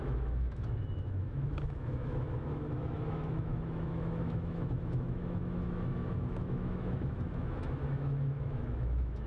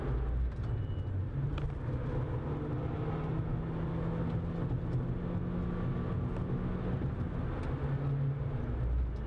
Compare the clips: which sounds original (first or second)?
second